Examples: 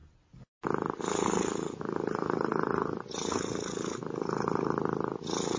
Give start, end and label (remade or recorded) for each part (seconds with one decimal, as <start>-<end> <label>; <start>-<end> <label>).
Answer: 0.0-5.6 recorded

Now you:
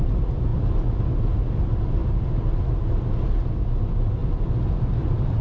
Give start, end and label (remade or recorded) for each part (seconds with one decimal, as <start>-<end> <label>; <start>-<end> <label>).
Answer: 0.0-5.4 recorded

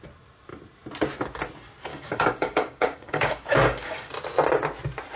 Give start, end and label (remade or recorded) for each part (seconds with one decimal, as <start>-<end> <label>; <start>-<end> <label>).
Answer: 0.0-1.9 recorded; 1.9-4.1 remade; 4.1-5.2 recorded

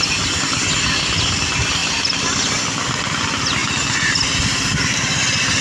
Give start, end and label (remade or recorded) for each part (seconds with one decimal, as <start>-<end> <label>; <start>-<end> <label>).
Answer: 0.0-5.6 recorded

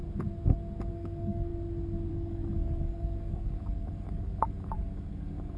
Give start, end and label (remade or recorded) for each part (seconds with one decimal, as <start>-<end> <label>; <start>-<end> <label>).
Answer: 0.0-0.9 recorded; 0.9-1.5 remade; 1.5-2.1 recorded; 2.1-5.6 remade